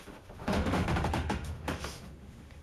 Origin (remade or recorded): remade